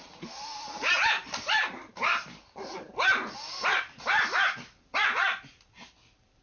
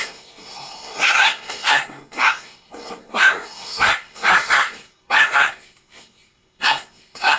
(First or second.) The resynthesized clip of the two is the second